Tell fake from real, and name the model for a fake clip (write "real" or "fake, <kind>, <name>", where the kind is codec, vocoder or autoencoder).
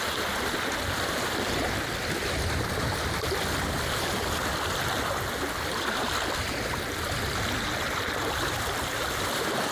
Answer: real